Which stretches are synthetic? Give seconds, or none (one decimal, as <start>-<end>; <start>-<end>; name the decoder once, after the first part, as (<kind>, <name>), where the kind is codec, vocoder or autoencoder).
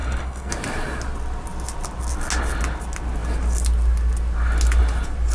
0.0-0.5 (codec, SNAC)